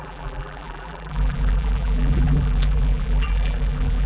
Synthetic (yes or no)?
yes